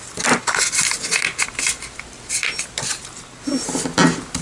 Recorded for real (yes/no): yes